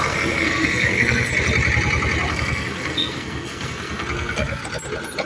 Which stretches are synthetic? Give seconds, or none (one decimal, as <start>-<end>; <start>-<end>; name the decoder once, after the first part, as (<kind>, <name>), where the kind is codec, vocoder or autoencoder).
0.0-1.3 (codec, SNAC); 2.3-4.6